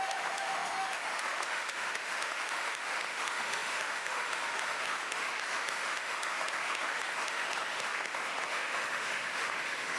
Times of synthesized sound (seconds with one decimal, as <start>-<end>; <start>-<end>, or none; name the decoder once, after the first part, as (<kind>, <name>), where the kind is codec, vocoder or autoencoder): 0.0-10.0 (autoencoder, DAC-VAE)